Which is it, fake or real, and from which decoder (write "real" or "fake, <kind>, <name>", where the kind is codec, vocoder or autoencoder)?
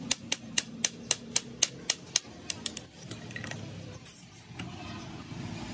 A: real